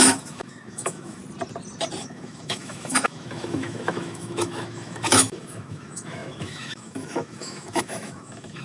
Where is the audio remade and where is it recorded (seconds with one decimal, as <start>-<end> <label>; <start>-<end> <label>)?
0.0-1.2 remade; 1.2-2.0 recorded; 2.0-8.6 remade